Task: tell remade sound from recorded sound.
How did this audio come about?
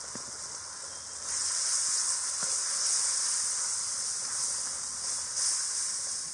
recorded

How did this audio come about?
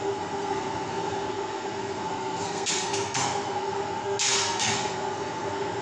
remade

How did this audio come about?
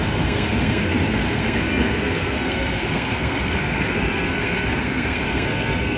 remade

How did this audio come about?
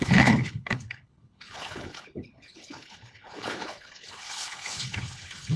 remade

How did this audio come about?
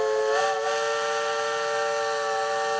recorded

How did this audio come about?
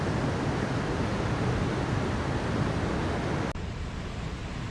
recorded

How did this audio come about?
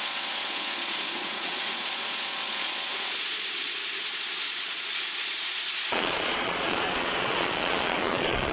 remade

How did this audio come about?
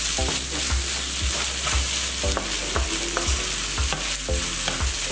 recorded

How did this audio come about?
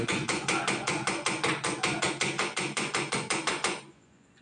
remade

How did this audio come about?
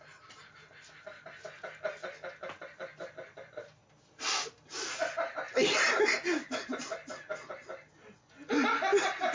recorded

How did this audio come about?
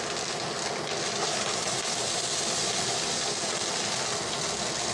recorded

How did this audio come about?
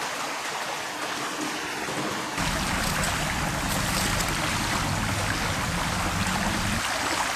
recorded